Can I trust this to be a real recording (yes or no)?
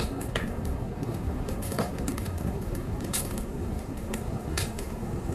no